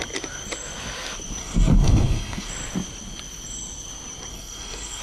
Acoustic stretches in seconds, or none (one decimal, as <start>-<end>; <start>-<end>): 0.0-1.4; 2.5-4.3

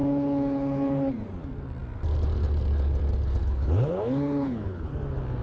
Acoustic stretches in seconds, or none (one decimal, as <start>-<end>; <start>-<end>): 1.1-3.4; 4.9-5.4

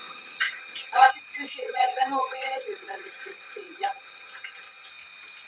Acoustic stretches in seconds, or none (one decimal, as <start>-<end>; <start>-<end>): 1.1-1.6; 4.9-5.5

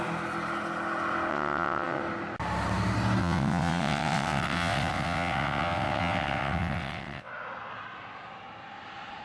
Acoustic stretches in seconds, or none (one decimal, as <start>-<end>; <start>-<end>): 0.0-1.3; 2.0-3.2; 7.3-9.2